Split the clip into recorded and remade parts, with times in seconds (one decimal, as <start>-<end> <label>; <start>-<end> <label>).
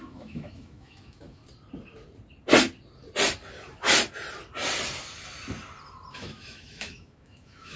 0.0-1.4 remade; 1.4-6.1 recorded; 6.1-7.8 remade